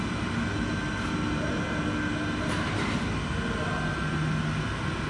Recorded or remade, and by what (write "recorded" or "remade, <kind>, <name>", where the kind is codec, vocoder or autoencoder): recorded